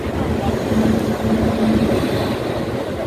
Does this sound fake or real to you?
real